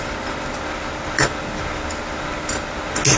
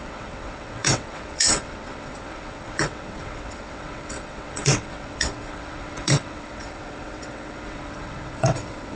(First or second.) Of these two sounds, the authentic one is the first